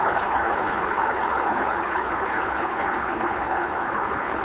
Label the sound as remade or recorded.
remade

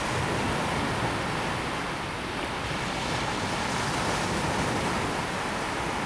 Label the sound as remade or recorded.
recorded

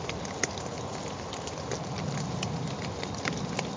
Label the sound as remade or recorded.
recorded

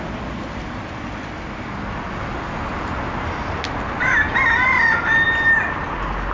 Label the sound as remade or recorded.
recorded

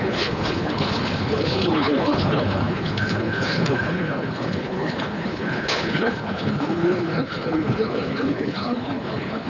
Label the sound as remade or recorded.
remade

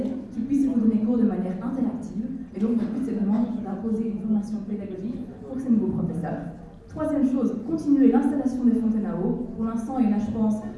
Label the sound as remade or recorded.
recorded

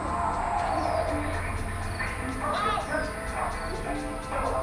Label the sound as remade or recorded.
recorded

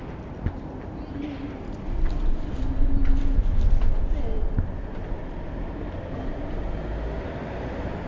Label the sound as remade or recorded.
recorded